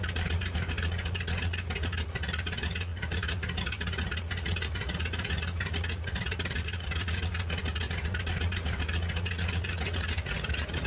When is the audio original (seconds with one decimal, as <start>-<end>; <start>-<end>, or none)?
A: none